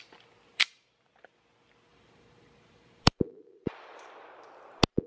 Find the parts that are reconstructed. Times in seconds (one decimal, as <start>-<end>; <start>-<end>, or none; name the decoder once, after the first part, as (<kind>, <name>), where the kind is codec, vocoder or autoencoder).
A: 0.5-1.0 (vocoder, BigVGAN v2); 1.9-4.2